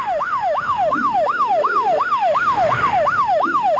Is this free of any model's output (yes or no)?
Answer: no